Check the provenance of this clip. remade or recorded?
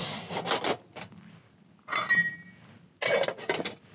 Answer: recorded